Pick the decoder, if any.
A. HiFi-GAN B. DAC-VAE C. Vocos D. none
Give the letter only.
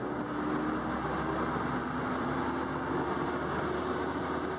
D